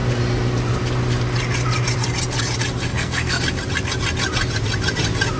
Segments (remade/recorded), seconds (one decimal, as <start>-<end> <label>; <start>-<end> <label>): 0.0-2.9 recorded; 2.9-3.4 remade; 3.4-5.4 recorded